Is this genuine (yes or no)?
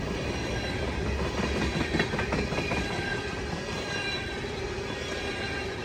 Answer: yes